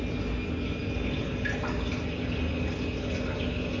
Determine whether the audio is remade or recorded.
recorded